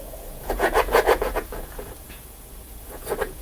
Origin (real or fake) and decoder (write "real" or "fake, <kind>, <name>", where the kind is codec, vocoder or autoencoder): fake, vocoder, Vocos